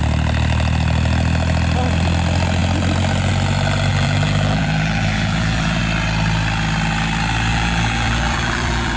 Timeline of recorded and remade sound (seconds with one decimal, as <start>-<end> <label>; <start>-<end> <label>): 0.0-3.9 recorded; 3.9-5.8 remade; 5.8-7.5 recorded; 7.5-9.0 remade